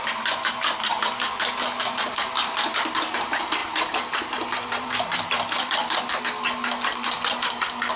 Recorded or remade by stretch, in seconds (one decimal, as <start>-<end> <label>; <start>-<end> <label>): 0.0-3.6 recorded; 3.6-6.2 remade; 6.2-8.0 recorded